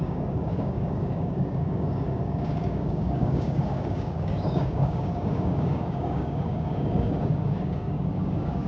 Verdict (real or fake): fake